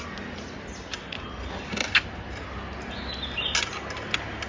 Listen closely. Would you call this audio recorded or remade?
recorded